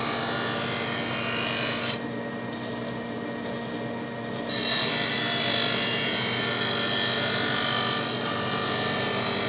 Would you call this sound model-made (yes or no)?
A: no